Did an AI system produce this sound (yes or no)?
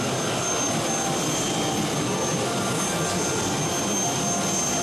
no